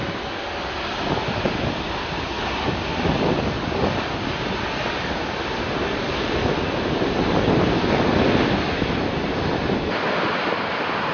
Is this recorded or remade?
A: recorded